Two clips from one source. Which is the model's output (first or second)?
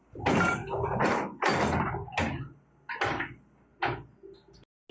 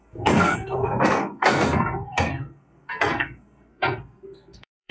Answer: second